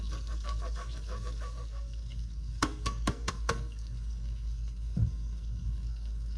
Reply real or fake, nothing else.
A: fake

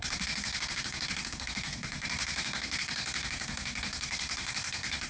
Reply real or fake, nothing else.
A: fake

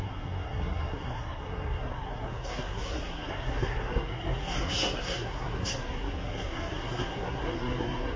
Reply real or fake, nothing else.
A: fake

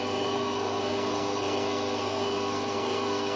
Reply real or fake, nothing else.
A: fake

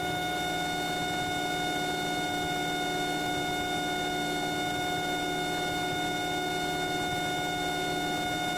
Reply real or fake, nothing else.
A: real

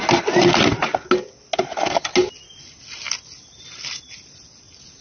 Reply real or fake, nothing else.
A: real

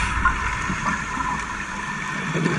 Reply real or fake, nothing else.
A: real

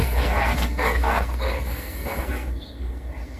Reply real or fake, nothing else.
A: fake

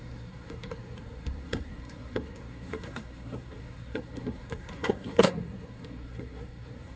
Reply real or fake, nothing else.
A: fake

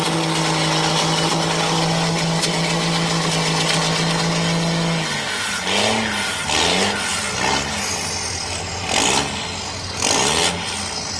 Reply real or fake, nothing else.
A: real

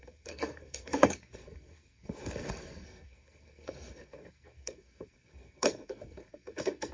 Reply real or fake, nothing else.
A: fake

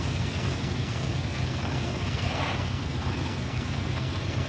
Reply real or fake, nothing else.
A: fake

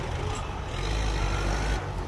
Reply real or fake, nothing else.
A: real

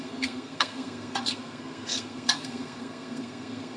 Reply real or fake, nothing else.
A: fake